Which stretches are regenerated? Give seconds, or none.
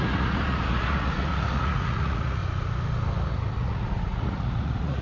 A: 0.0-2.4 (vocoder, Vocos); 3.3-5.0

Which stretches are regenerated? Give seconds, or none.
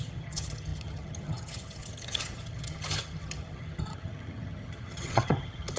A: 0.0-5.8 (vocoder, HiFi-GAN)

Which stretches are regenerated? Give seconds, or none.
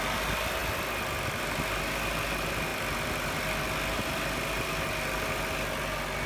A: none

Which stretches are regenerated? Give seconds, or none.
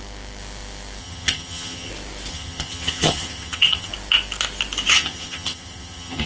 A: 1.0-1.9 (vocoder, HiFi-GAN); 2.3-3.9; 4.9-6.3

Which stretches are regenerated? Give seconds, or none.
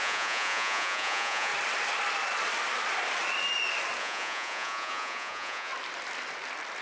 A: 0.0-1.5 (vocoder, Vocos); 4.0-5.7